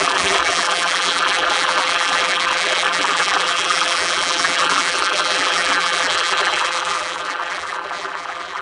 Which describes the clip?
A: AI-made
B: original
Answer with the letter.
A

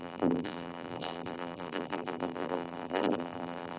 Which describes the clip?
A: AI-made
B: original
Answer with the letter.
A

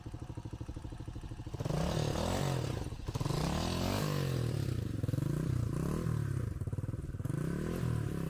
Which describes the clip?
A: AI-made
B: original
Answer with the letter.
B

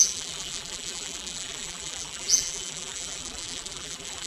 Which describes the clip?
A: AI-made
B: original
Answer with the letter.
A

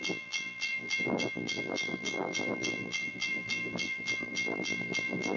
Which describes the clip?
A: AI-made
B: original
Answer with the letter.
A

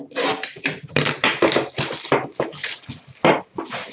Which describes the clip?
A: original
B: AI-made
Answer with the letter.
A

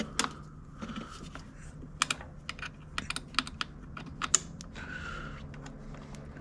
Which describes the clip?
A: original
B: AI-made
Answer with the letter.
A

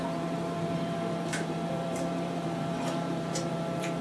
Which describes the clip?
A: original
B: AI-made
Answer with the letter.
B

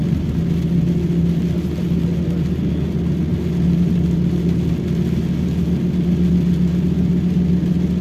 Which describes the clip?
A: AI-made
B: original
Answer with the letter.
B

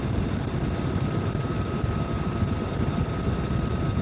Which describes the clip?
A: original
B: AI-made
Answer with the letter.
B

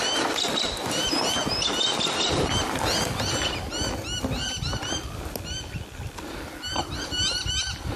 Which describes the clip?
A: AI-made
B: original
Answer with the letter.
B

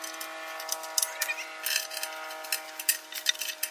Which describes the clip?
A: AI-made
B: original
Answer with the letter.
B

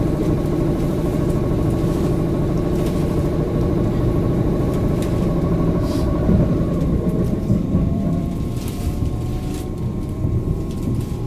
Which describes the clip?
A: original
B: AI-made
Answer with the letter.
B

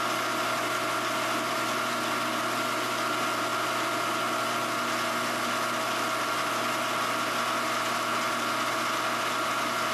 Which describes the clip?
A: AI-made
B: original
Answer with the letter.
B